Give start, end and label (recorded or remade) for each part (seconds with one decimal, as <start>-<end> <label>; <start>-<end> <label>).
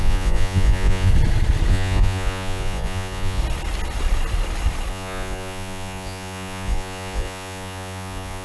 0.0-1.1 remade; 1.1-1.7 recorded; 1.7-3.4 remade; 3.4-4.9 recorded; 4.9-8.4 remade